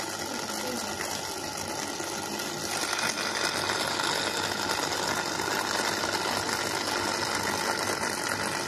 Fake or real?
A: real